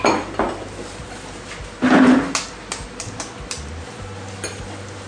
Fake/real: real